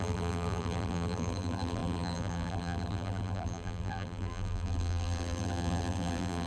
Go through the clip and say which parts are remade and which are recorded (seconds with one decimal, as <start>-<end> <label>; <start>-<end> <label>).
0.0-6.5 remade